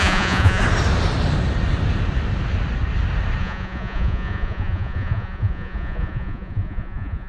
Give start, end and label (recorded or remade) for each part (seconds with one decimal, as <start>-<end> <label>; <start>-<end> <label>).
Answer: 0.0-0.6 remade; 0.6-3.4 recorded; 3.4-7.3 remade